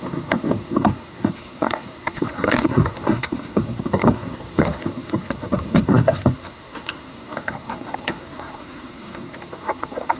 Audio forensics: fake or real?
fake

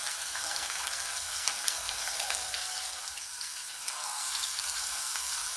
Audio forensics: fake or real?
fake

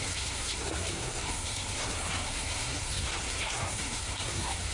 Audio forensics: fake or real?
fake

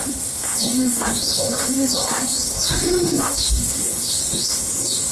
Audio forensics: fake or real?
fake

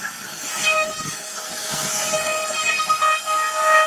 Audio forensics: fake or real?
fake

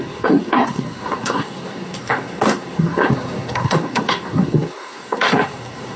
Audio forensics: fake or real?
fake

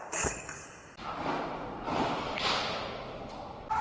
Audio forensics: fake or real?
real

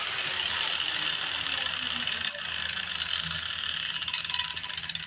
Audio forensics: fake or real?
real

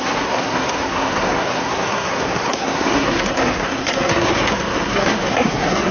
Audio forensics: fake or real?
fake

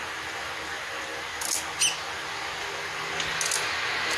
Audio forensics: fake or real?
real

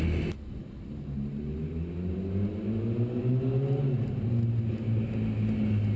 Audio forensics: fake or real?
real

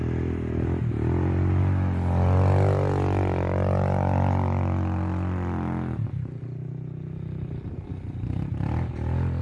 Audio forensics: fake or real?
real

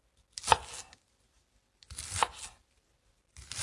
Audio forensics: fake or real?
real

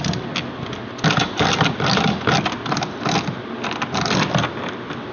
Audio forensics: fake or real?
real